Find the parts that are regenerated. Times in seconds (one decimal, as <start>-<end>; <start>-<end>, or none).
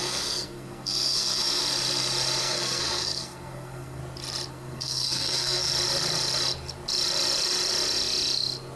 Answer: 0.0-1.6; 2.4-4.0; 4.5-5.7